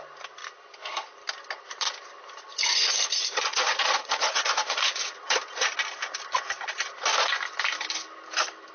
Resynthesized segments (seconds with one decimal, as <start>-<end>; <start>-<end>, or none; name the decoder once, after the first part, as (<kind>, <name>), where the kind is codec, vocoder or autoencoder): 3.2-5.2 (vocoder, Vocos)